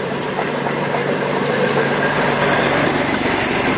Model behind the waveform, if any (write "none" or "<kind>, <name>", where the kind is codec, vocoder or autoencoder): vocoder, BigVGAN v2